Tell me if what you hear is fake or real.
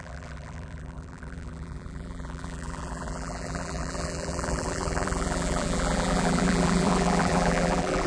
fake